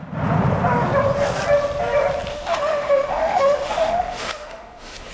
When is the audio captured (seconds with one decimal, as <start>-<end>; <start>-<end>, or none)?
0.0-2.3